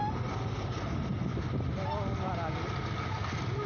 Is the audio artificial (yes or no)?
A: no